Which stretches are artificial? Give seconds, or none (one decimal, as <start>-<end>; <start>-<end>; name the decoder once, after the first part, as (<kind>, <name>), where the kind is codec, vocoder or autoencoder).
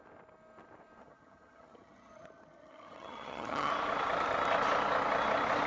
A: 1.0-3.7 (vocoder, HiFi-GAN)